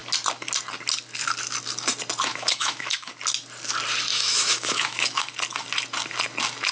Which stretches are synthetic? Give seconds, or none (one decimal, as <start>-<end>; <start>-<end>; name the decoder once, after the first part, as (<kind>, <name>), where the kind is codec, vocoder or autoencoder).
2.3-3.1 (autoencoder, DAC-VAE); 4.1-5.2